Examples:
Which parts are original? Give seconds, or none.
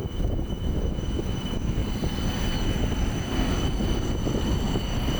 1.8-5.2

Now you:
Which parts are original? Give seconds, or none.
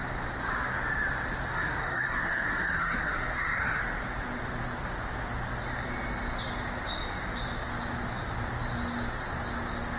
0.0-1.5; 3.8-10.0